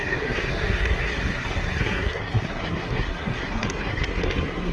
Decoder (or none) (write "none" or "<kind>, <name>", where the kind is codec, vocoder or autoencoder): codec, SNAC